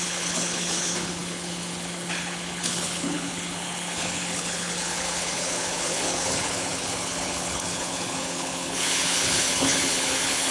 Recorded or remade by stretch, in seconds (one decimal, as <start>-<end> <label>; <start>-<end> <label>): 0.0-10.5 remade